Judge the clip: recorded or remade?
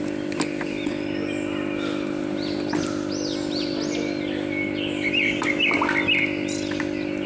recorded